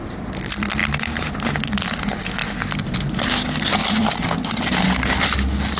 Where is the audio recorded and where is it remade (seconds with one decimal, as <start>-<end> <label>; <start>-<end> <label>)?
0.0-2.4 remade; 2.4-3.0 recorded; 3.0-5.8 remade